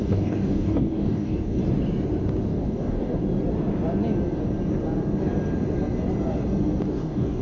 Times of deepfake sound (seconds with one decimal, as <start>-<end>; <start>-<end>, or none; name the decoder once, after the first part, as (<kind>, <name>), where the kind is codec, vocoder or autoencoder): 0.0-1.6 (codec, DAC); 2.5-3.2; 6.8-7.4